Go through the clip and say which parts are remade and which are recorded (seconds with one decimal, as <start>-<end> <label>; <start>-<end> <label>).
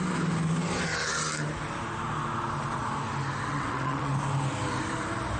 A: 0.0-3.5 recorded; 3.5-4.1 remade; 4.1-5.4 recorded